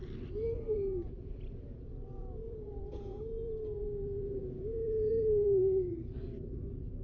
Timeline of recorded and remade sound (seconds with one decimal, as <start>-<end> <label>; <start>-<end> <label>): 0.0-0.9 recorded; 0.9-5.1 remade; 5.1-7.0 recorded